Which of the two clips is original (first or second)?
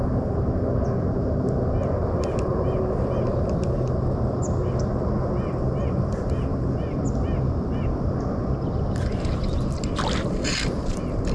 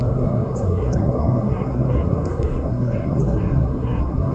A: first